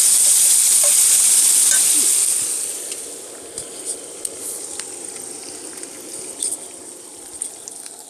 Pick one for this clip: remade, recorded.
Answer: recorded